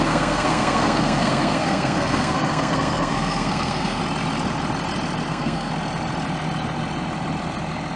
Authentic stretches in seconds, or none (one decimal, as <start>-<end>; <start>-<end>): 4.0-5.3; 5.7-8.0